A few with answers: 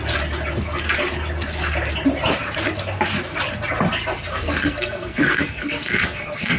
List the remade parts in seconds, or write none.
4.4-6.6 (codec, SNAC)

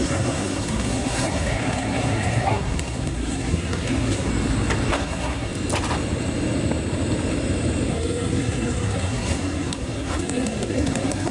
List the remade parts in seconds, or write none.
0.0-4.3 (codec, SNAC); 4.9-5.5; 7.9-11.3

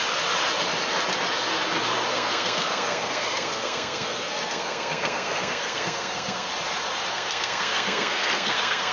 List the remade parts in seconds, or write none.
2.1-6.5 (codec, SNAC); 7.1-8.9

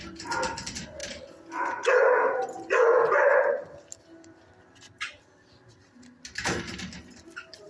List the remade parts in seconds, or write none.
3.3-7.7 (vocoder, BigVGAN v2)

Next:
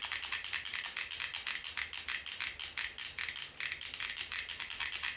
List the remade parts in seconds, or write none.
0.0-1.3 (vocoder, BigVGAN v2); 4.0-5.2

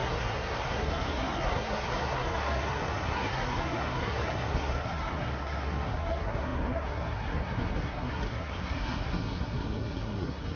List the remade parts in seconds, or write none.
0.0-10.6 (codec, SNAC)

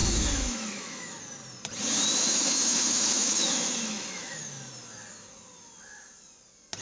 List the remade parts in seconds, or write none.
0.0-1.2 (autoencoder, DAC-VAE); 2.2-4.4